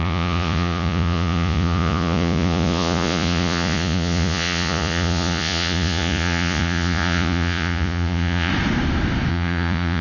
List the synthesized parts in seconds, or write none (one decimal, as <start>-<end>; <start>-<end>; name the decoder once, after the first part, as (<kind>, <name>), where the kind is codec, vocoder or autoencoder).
0.0-8.5 (vocoder, Vocos); 9.3-10.0

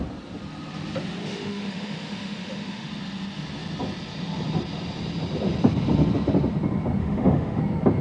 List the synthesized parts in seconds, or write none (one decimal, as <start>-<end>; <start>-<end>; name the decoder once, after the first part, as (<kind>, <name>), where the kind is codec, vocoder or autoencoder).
1.2-2.9 (autoencoder, DAC-VAE); 7.0-7.6